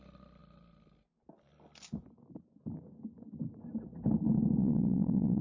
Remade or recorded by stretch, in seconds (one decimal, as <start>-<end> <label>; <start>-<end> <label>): 0.0-4.6 recorded; 4.6-5.4 remade